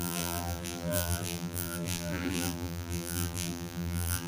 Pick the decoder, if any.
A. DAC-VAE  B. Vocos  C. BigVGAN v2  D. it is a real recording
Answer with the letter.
C